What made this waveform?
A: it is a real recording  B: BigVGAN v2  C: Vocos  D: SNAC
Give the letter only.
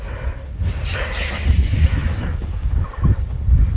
A